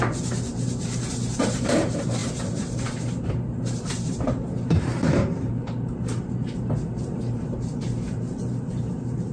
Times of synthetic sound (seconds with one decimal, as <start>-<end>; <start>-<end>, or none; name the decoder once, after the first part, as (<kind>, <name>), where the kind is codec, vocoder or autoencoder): 0.0-9.3 (vocoder, BigVGAN v2)